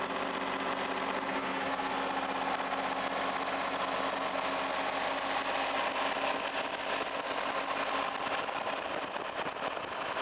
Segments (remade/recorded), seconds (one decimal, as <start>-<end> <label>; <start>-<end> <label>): 0.0-1.3 recorded; 1.3-1.9 remade; 1.9-10.2 recorded